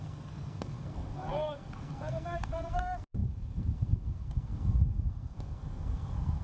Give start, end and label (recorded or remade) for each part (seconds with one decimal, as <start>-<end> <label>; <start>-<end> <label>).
0.0-6.4 remade

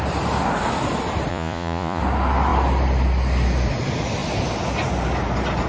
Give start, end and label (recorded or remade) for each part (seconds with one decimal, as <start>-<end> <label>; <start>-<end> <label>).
0.0-1.3 recorded; 1.3-2.0 remade; 2.0-5.7 recorded

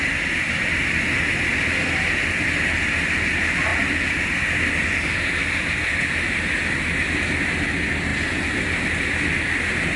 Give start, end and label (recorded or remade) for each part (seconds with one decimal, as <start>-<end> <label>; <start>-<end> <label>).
0.0-10.0 recorded

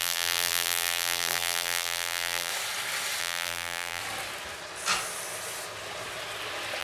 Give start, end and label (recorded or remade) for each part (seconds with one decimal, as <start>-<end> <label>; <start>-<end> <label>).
0.0-2.5 remade; 2.5-3.2 recorded; 3.2-4.0 remade; 4.0-6.8 recorded

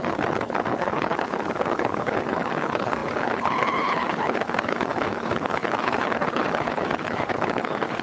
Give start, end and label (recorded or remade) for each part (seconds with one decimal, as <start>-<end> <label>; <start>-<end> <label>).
0.0-8.0 remade

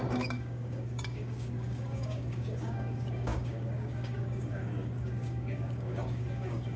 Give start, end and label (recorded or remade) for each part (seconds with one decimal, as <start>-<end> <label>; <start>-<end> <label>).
0.0-6.8 remade

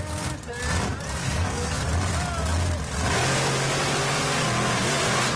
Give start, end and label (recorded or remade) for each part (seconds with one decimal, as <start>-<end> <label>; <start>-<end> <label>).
0.0-1.2 recorded; 1.2-1.8 remade; 1.8-5.4 recorded

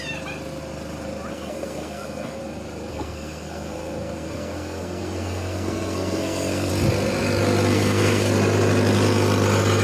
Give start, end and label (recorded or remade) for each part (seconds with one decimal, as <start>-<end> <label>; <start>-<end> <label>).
0.0-1.3 recorded; 1.3-2.4 remade; 2.4-2.9 recorded; 2.9-6.7 remade; 6.7-7.7 recorded; 7.7-8.3 remade; 8.3-9.8 recorded